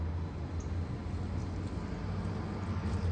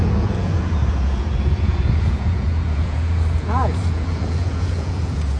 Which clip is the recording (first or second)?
first